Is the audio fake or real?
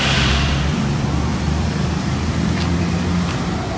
fake